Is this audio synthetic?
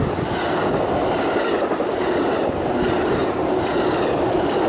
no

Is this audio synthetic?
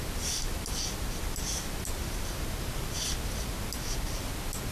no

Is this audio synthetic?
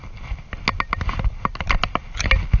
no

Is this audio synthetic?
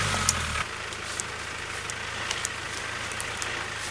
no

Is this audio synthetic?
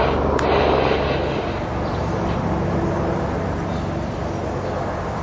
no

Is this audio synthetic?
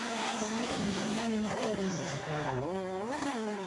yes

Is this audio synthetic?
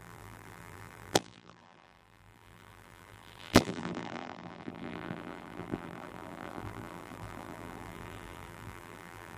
yes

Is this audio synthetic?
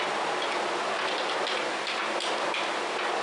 no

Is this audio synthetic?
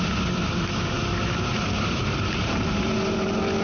yes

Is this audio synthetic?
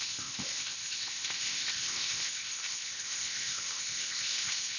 yes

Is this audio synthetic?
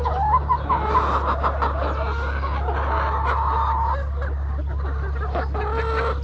no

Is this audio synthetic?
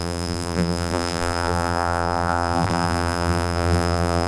yes